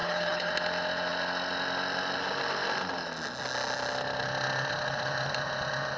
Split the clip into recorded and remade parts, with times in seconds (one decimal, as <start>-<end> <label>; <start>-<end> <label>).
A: 0.0-0.5 remade; 0.5-6.0 recorded